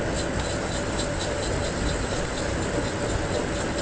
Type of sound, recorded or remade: recorded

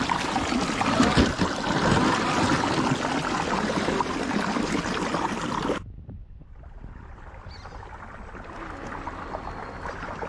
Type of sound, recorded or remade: recorded